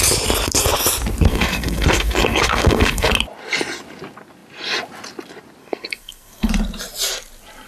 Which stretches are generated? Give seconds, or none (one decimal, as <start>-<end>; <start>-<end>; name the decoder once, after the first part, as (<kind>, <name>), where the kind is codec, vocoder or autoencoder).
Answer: 1.3-3.1 (codec, SNAC); 5.6-6.5